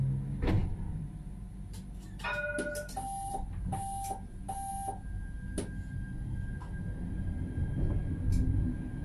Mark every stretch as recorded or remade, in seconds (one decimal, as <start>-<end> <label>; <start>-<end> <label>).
0.0-9.0 recorded